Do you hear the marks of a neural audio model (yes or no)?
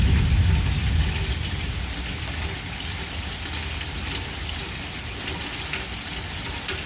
no